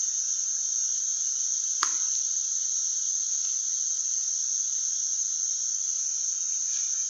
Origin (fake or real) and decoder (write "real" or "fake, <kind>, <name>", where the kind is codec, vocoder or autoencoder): real